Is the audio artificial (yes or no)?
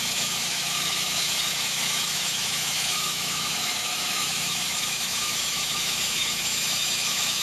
yes